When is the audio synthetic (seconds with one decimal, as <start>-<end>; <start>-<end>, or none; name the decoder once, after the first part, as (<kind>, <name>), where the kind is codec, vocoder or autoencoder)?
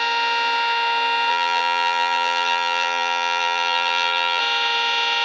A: 1.3-4.4 (vocoder, BigVGAN v2)